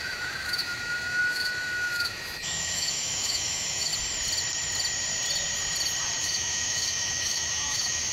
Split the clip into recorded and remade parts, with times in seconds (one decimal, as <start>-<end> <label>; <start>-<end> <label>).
0.0-3.9 remade; 3.9-6.2 recorded; 6.2-8.1 remade